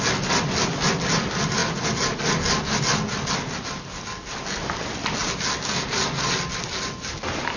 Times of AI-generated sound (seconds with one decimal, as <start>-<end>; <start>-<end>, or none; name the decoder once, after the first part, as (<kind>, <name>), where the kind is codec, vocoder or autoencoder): none